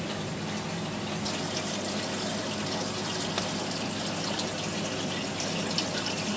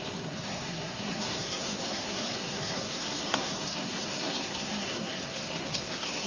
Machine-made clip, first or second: second